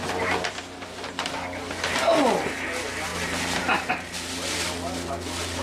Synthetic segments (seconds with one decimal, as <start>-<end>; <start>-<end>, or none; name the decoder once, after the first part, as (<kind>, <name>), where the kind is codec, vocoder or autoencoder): 3.1-3.9 (vocoder, BigVGAN v2)